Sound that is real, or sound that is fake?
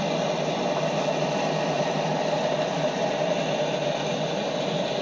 real